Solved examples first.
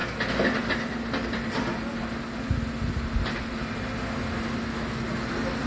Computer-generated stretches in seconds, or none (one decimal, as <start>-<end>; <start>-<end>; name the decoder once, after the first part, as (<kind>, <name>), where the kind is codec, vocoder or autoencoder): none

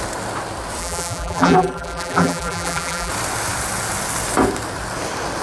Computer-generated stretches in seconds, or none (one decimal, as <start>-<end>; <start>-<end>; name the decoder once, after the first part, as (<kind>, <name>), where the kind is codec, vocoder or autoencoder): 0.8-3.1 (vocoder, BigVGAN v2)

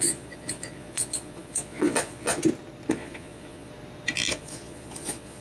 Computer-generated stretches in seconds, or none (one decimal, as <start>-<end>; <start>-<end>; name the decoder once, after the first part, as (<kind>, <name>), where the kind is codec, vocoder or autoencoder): 0.0-2.4 (vocoder, Vocos); 2.9-3.7; 4.3-5.4